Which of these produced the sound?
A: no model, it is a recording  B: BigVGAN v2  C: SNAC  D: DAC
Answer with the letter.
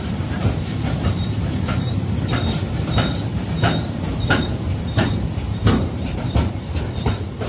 B